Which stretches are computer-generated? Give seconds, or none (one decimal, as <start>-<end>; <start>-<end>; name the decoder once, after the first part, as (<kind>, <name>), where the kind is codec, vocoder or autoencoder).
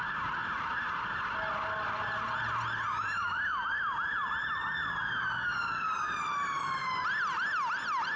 none